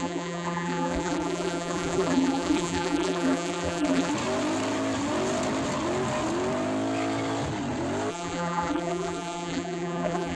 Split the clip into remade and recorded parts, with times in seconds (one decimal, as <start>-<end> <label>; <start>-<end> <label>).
0.0-4.1 remade; 4.1-8.1 recorded; 8.1-10.3 remade